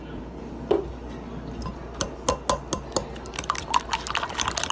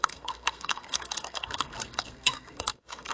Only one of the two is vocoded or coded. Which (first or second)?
second